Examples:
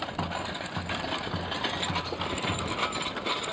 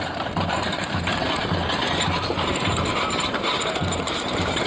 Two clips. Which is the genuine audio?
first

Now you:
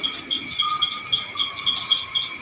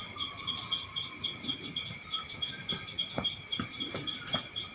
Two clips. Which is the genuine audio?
first